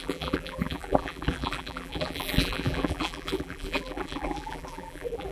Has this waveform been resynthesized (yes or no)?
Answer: yes